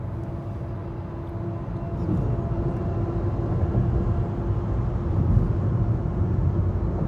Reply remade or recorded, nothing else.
recorded